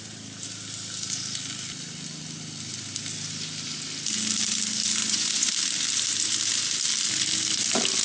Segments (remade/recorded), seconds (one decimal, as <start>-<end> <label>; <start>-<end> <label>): 0.0-5.0 recorded; 5.0-5.5 remade; 5.5-8.0 recorded